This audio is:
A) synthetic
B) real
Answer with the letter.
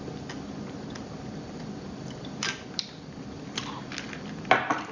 B